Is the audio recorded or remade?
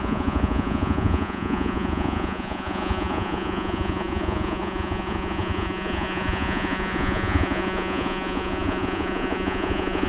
remade